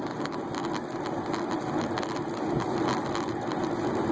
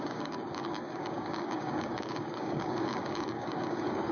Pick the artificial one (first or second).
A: second